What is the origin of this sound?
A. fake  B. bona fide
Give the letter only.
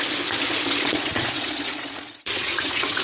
A